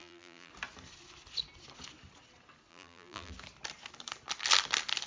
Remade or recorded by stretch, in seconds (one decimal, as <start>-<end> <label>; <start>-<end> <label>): 0.0-0.5 remade; 0.5-2.7 recorded; 2.7-3.3 remade; 3.3-5.1 recorded